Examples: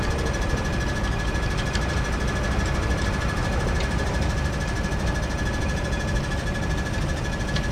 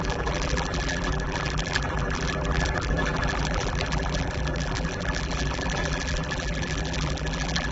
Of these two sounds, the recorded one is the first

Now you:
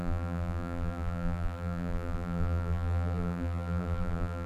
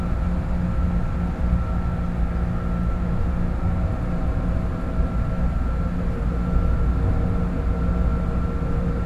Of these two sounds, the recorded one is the second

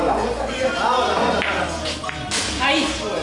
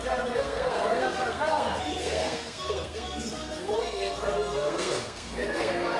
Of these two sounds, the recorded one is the first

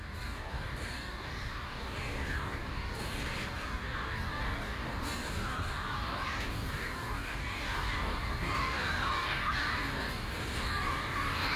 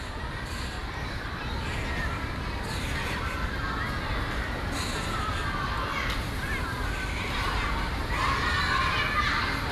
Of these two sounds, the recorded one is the second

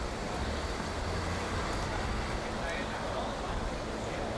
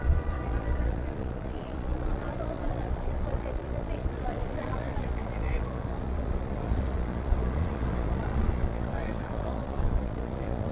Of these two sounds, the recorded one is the first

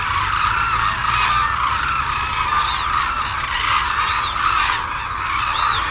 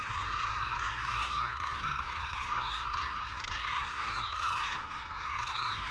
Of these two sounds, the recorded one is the first